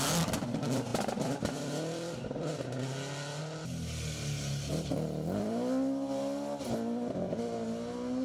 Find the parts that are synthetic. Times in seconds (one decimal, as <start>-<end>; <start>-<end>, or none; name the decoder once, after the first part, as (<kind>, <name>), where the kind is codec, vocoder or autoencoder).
none